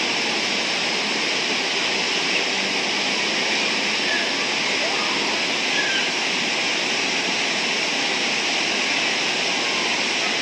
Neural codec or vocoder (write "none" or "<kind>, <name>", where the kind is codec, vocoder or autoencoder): none